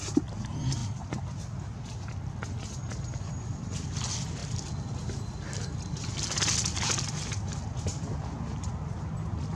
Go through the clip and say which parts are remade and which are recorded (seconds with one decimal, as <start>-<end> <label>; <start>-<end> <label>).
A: 0.0-9.6 recorded